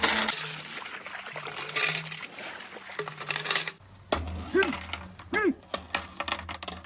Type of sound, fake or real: real